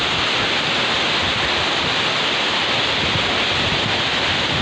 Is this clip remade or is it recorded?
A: recorded